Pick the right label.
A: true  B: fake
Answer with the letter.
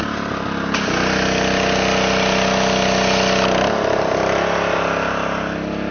A